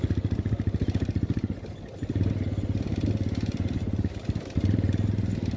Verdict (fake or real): real